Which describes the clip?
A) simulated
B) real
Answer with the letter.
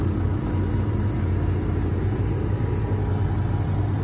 B